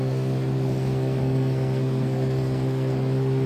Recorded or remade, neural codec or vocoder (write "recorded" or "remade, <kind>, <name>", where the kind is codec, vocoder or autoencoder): remade, codec, SNAC